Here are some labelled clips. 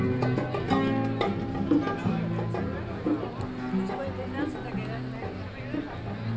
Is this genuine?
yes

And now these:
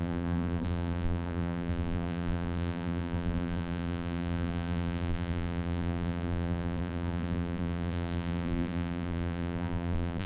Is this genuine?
no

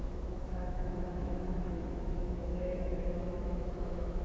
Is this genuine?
no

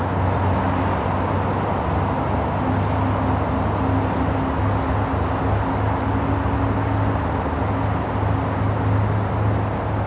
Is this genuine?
yes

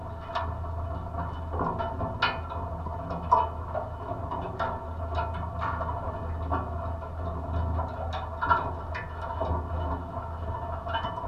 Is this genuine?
yes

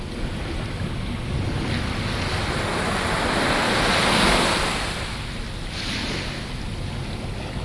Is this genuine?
yes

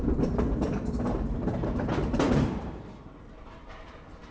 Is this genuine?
no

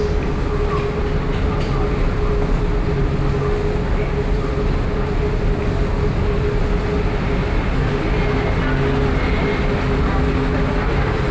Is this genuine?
yes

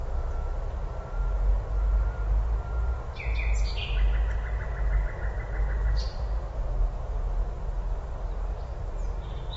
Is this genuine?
yes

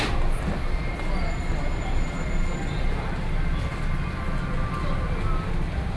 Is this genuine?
yes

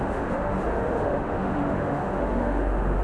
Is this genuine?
no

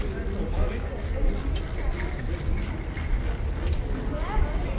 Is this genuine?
yes